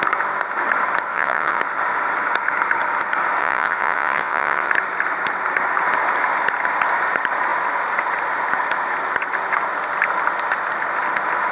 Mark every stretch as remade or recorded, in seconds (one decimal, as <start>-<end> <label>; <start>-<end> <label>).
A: 0.0-1.1 recorded; 1.1-1.6 remade; 1.6-3.4 recorded; 3.4-4.7 remade; 4.7-11.5 recorded

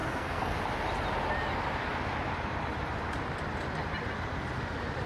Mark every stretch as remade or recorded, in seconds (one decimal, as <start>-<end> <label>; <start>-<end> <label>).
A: 0.0-0.6 remade; 0.6-5.1 recorded

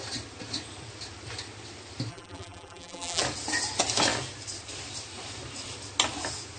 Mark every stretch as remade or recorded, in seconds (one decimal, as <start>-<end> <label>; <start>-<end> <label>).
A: 0.0-2.1 recorded; 2.1-3.2 remade; 3.2-6.6 recorded

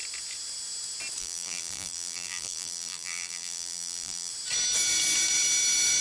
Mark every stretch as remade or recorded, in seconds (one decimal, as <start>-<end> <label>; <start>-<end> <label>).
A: 0.0-1.2 recorded; 1.2-4.3 remade; 4.3-6.0 recorded

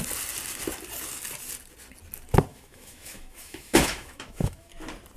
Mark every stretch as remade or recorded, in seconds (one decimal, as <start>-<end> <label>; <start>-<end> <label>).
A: 0.0-2.5 recorded; 2.5-4.7 remade; 4.7-5.2 recorded

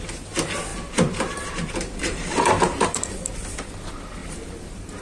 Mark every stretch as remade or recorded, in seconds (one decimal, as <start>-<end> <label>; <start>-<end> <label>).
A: 0.0-0.7 recorded; 0.7-3.7 remade; 3.7-4.2 recorded; 4.2-5.0 remade